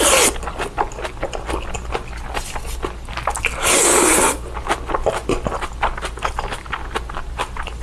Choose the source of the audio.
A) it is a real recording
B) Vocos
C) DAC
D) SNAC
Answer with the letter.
A